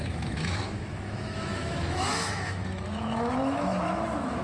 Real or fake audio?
fake